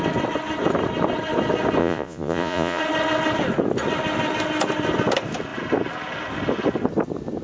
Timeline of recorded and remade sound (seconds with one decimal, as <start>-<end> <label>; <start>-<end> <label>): 0.0-1.8 recorded; 1.8-2.8 remade; 2.8-7.4 recorded